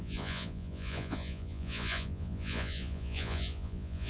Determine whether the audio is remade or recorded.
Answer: remade